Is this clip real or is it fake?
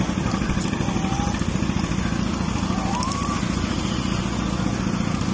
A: real